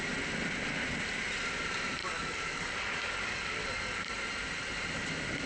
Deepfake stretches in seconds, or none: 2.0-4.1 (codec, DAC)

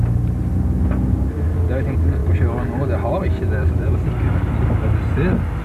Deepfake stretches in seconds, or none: none

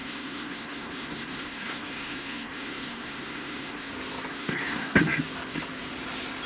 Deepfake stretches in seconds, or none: 0.0-3.9 (codec, SNAC); 4.3-5.0